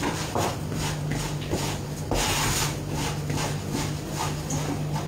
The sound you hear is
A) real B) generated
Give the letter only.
A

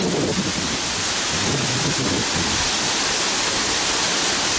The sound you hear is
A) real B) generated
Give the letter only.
A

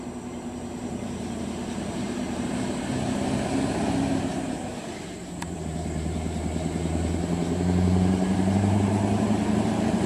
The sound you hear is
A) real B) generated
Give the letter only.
B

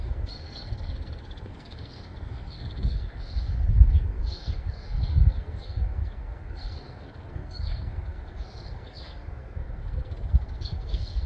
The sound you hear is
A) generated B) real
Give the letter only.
A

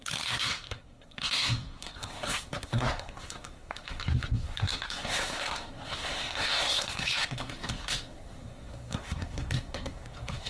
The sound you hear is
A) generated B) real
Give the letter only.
A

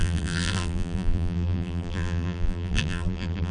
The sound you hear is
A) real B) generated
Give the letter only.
B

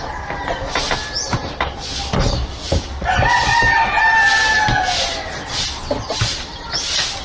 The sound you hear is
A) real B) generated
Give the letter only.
A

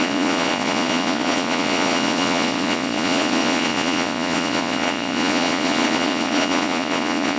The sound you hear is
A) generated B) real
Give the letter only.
A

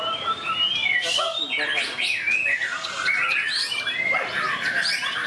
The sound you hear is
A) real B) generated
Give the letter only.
A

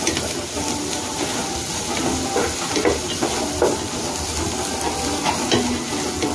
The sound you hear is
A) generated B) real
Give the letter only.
B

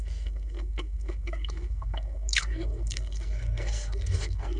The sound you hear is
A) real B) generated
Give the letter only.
B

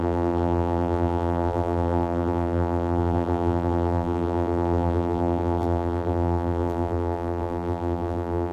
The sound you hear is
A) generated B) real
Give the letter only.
A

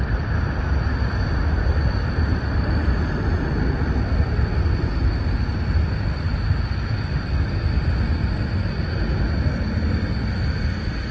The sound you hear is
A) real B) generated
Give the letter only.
A